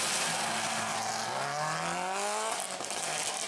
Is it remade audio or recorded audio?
recorded